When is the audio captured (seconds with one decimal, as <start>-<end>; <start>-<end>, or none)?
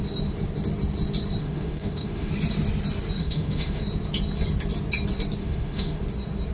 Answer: 0.0-1.4; 2.3-3.2; 3.8-5.4; 6.0-6.5